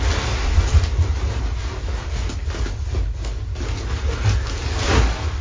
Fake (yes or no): no